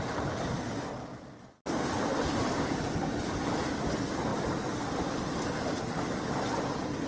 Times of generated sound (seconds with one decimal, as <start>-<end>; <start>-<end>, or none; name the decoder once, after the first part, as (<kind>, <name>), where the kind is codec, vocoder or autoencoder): 4.3-5.1 (vocoder, BigVGAN v2)